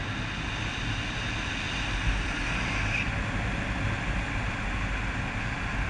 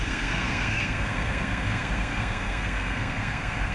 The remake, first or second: second